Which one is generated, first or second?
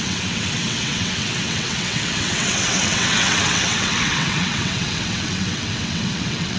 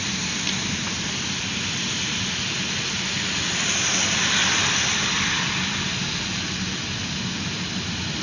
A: first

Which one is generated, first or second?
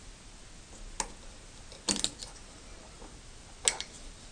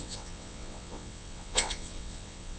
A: second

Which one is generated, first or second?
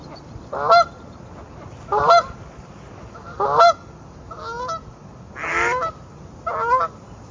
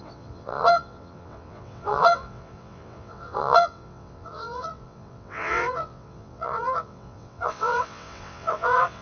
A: second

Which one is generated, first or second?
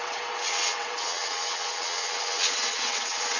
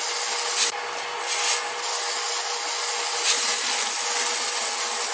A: first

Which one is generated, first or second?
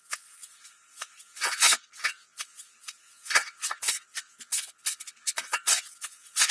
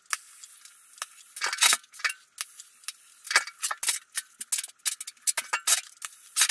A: first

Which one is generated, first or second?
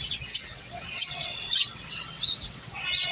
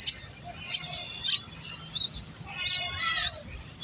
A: first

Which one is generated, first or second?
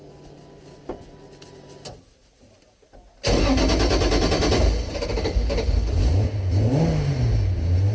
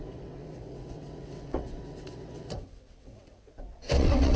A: second